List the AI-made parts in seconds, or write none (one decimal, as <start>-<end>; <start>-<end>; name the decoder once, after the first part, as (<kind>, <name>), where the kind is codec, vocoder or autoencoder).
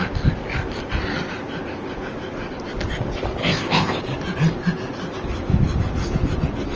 3.4-4.0 (codec, ZipCodec)